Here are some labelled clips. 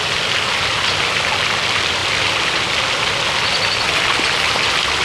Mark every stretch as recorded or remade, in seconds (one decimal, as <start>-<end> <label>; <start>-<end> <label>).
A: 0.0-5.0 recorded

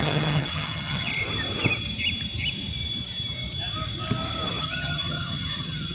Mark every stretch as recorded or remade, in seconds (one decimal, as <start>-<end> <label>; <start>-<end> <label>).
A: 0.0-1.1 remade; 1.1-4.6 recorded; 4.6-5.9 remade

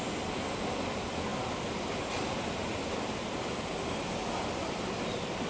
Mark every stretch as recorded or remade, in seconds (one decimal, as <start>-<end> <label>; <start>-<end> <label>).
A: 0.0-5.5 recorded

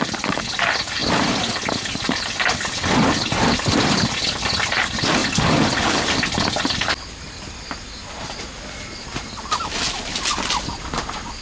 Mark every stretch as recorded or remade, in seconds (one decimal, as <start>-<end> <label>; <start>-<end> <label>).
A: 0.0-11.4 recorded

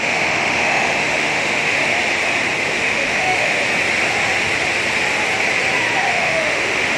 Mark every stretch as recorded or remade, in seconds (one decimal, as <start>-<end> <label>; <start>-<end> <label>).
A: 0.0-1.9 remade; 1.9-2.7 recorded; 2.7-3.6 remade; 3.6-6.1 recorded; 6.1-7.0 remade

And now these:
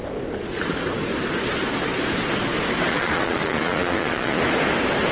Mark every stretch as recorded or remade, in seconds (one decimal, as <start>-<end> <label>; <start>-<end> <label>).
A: 0.0-2.9 recorded; 2.9-4.4 remade; 4.4-5.1 recorded

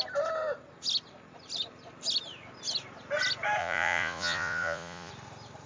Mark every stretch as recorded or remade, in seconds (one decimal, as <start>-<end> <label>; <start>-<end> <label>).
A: 0.0-3.6 recorded; 3.6-5.1 remade; 5.1-5.7 recorded

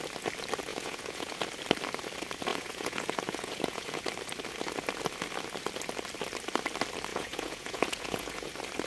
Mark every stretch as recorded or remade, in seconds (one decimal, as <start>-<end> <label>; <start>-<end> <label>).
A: 0.0-0.7 recorded; 0.7-1.4 remade; 1.4-2.5 recorded; 2.5-4.0 remade; 4.0-7.1 recorded; 7.1-8.5 remade; 8.5-8.9 recorded